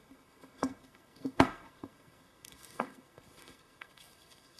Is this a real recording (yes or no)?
no